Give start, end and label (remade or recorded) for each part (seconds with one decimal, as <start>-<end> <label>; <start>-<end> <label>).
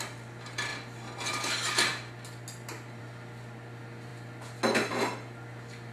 0.0-5.9 recorded